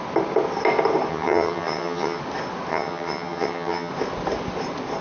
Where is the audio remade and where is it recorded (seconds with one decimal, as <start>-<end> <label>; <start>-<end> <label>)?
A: 0.0-1.1 recorded; 1.1-2.2 remade; 2.2-2.7 recorded; 2.7-3.9 remade; 3.9-5.0 recorded